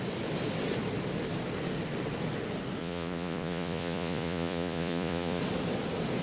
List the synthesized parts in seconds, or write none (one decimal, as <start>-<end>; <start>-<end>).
2.8-5.4